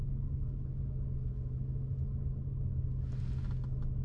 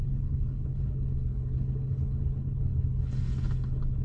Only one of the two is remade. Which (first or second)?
second